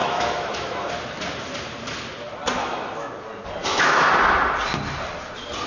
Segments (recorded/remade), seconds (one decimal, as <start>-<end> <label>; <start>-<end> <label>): 0.0-0.9 remade; 0.9-2.6 recorded; 2.6-3.1 remade; 3.1-3.6 recorded; 3.6-4.1 remade; 4.1-5.7 recorded